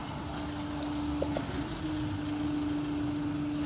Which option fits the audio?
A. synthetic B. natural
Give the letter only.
B